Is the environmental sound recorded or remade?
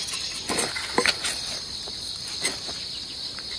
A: recorded